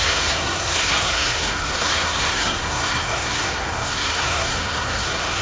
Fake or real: fake